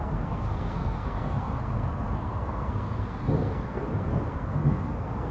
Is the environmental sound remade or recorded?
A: remade